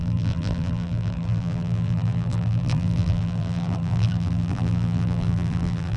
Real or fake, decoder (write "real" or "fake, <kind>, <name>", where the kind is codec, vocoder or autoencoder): fake, vocoder, BigVGAN v2